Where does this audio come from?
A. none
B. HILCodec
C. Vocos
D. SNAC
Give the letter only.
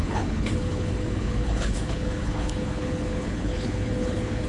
B